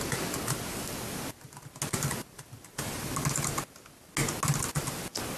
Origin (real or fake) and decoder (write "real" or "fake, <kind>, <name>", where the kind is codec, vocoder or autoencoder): real